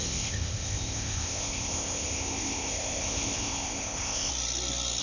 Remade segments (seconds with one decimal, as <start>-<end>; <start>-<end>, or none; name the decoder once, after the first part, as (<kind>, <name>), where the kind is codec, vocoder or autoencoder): 0.0-4.3 (codec, ZipCodec)